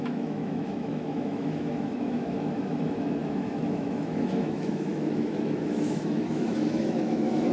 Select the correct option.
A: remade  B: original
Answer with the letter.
A